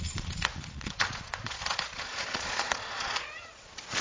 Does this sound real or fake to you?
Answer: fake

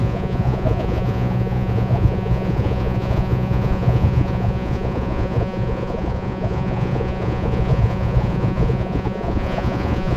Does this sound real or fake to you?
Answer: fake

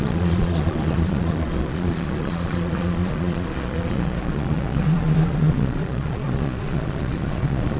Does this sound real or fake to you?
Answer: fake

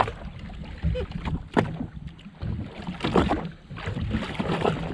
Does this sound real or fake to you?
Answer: real